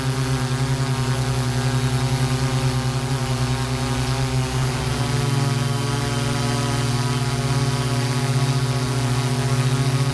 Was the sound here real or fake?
real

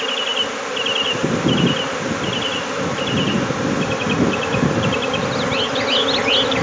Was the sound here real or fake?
real